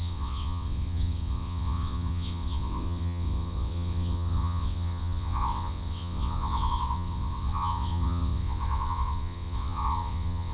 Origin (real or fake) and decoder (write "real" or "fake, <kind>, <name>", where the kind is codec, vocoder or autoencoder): fake, vocoder, WaveNeXt